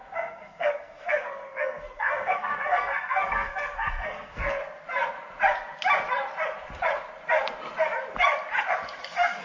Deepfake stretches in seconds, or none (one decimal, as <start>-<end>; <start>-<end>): 0.0-4.6